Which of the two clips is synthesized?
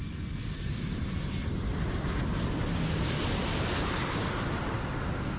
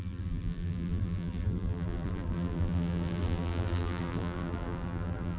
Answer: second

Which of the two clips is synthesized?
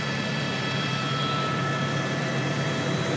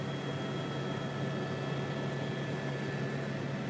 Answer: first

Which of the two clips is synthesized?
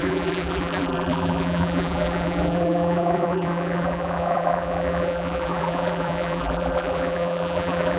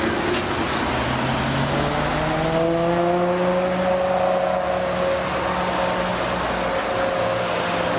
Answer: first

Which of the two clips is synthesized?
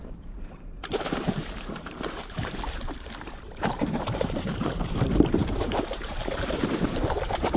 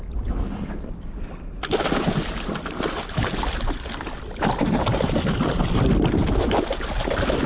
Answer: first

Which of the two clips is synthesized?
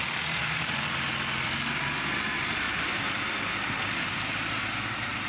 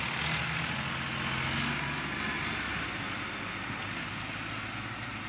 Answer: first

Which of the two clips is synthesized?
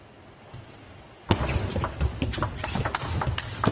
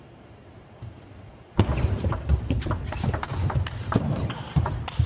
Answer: second